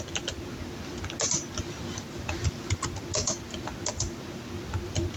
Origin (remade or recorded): recorded